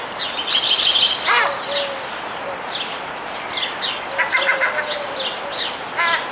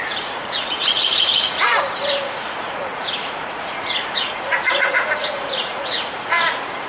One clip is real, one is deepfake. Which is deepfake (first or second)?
second